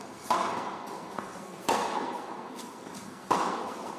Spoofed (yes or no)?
yes